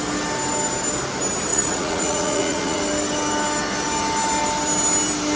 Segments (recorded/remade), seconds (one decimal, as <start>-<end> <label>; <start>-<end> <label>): 0.0-1.5 recorded; 1.5-2.8 remade; 2.8-5.4 recorded